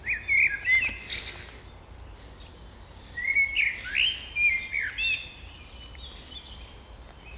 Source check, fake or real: real